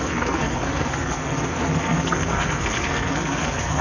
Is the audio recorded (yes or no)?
no